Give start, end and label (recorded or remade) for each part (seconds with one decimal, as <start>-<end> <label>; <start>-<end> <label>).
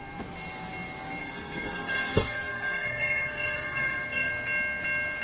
0.0-1.2 recorded; 1.2-4.3 remade; 4.3-5.2 recorded